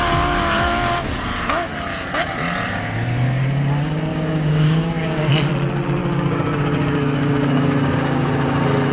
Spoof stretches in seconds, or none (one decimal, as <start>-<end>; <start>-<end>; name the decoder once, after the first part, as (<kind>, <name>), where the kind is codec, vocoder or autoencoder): 4.1-5.3 (codec, DAC); 6.0-8.3